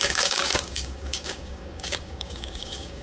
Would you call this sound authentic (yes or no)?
no